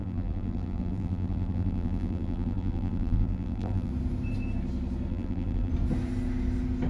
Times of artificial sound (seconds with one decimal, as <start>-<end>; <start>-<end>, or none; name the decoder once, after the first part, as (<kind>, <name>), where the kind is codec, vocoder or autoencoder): 0.0-3.9 (vocoder, BigVGAN v2); 5.1-5.7